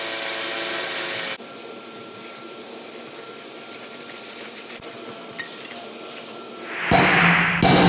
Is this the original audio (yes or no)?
yes